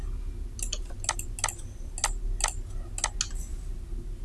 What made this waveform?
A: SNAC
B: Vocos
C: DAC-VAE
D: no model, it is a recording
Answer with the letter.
D